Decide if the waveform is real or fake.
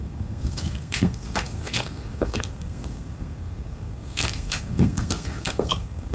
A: fake